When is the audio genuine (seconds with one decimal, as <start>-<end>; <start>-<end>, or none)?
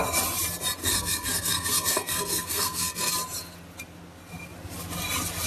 0.0-0.8; 3.1-5.5